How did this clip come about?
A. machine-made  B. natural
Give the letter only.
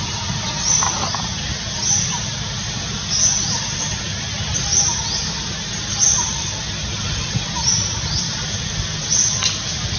B